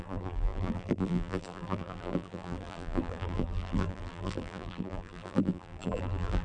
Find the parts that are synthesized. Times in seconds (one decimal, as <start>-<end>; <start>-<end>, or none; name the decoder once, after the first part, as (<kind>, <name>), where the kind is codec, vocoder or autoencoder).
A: 0.0-6.4 (vocoder, BigVGAN v2)